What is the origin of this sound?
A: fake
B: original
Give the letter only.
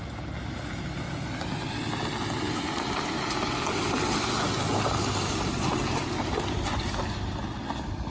B